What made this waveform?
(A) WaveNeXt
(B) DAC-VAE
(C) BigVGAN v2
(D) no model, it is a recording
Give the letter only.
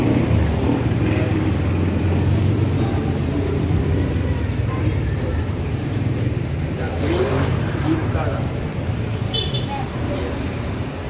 C